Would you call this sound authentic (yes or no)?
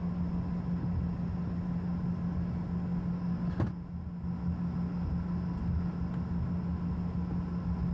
yes